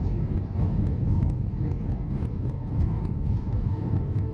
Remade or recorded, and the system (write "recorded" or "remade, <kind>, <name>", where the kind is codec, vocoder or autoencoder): remade, codec, DAC